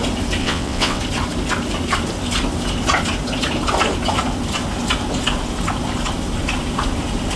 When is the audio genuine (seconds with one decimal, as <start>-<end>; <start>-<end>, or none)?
0.0-0.4; 1.0-7.4